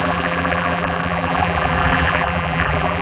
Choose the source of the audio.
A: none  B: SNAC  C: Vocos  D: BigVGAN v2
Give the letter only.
D